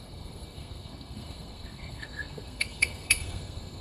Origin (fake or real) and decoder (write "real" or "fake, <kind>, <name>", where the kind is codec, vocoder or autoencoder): fake, codec, SNAC